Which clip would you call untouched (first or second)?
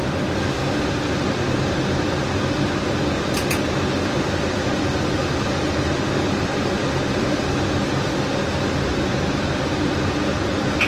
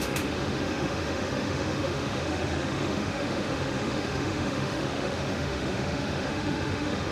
first